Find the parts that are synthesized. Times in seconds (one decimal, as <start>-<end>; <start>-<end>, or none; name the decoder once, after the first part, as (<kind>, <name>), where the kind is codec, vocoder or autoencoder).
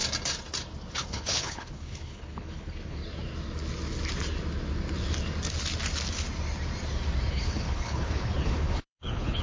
0.9-3.0 (codec, HILCodec); 7.3-9.4